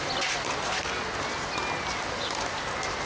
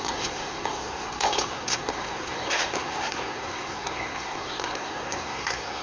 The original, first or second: first